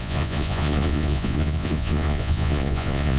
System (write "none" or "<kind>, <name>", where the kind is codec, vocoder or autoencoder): vocoder, Vocos